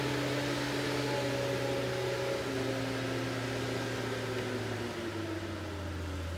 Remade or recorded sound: recorded